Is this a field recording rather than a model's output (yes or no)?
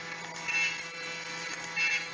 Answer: yes